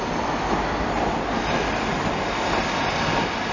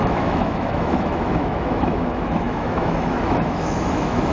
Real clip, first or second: first